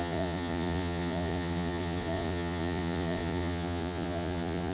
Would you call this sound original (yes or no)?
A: no